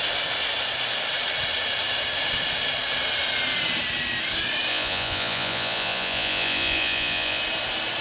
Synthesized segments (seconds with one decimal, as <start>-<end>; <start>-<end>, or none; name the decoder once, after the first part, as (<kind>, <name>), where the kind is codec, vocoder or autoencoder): 4.7-7.4 (vocoder, Vocos)